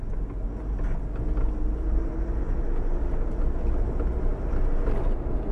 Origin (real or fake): real